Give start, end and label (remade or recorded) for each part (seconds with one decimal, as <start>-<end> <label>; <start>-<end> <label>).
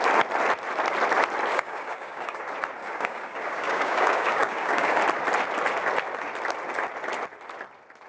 0.0-1.5 recorded; 1.5-2.4 remade; 2.4-2.8 recorded; 2.8-5.0 remade; 5.0-8.1 recorded